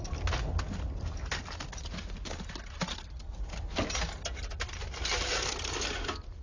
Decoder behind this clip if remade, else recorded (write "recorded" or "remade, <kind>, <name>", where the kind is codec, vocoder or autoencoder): recorded